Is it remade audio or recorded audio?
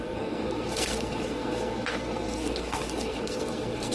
remade